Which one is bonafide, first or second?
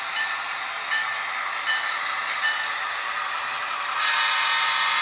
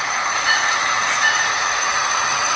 first